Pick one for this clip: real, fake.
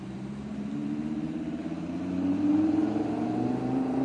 fake